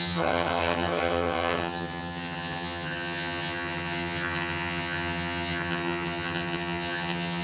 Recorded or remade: remade